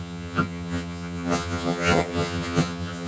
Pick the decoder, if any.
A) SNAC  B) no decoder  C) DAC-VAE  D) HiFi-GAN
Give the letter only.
D